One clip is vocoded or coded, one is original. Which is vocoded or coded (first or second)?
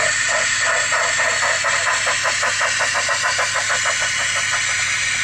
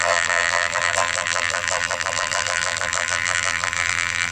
second